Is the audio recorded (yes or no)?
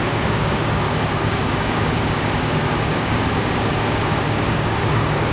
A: no